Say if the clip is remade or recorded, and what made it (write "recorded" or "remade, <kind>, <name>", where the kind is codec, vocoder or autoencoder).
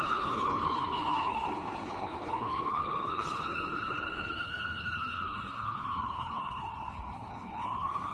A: remade, codec, HILCodec